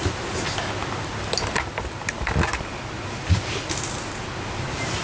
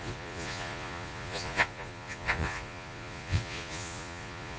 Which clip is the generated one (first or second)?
second